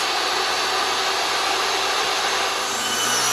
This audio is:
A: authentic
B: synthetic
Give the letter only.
A